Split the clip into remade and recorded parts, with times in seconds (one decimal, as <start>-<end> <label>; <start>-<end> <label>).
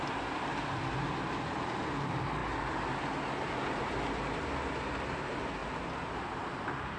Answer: 0.0-7.0 recorded